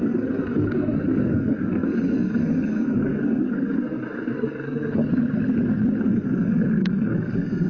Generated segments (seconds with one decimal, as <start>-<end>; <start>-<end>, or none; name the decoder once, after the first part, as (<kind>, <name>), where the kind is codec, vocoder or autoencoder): 0.0-5.1 (codec, SNAC); 6.0-7.7